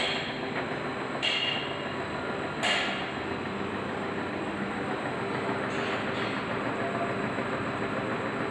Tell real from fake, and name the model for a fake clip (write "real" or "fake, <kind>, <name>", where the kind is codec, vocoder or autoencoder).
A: real